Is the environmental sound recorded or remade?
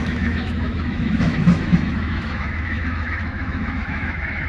remade